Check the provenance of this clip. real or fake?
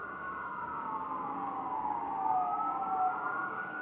fake